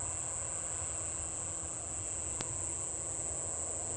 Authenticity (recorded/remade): recorded